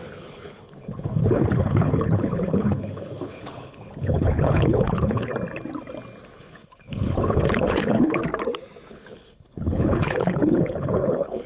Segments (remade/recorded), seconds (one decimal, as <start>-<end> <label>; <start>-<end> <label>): 0.0-5.3 remade; 5.3-6.3 recorded; 6.3-8.2 remade; 8.2-8.9 recorded; 8.9-11.5 remade